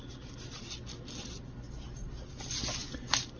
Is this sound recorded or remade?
recorded